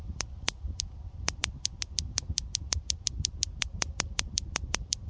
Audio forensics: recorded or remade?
recorded